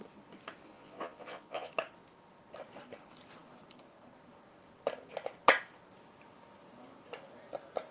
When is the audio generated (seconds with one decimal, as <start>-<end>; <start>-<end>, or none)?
0.7-1.7